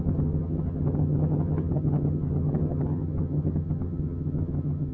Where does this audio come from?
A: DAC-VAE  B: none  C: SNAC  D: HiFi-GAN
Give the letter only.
D